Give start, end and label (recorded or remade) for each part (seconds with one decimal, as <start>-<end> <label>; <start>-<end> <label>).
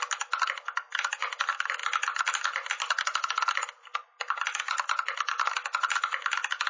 0.0-6.7 recorded